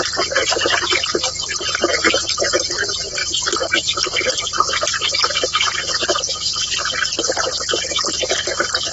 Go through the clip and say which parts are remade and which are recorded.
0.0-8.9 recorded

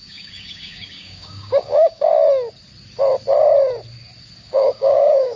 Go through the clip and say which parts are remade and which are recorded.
0.0-2.1 remade; 2.1-4.4 recorded; 4.4-5.4 remade

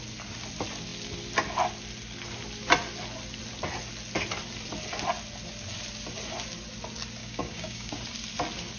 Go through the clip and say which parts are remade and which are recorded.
0.0-7.2 recorded; 7.2-7.9 remade; 7.9-8.8 recorded

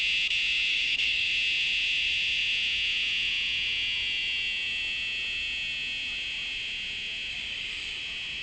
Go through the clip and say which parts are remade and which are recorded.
0.0-0.7 recorded; 0.7-1.3 remade; 1.3-7.3 recorded; 7.3-8.0 remade; 8.0-8.4 recorded